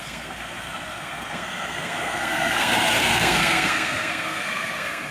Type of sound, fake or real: fake